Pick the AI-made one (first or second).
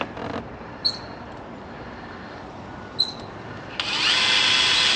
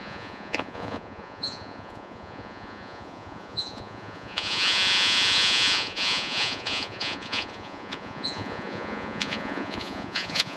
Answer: second